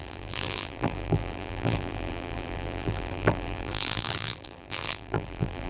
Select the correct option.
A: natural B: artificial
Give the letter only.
B